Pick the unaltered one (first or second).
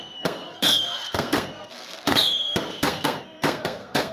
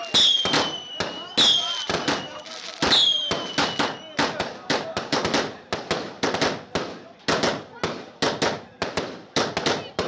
second